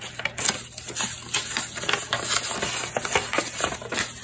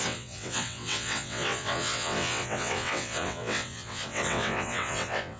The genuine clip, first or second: first